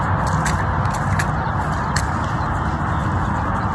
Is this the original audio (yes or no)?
yes